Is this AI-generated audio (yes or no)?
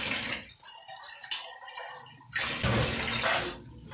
no